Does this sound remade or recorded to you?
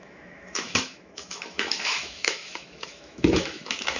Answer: remade